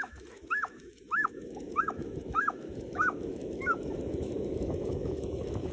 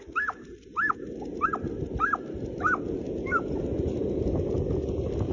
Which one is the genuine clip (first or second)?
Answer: second